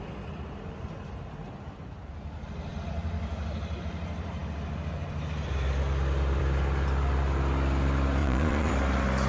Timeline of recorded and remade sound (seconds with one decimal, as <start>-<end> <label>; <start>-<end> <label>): 0.0-8.2 recorded; 8.2-8.7 remade; 8.7-9.3 recorded